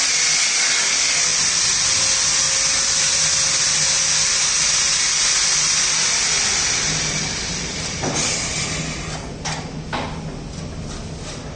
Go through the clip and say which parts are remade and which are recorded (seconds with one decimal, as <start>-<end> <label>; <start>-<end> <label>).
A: 0.0-1.3 recorded; 1.3-2.0 remade; 2.0-11.6 recorded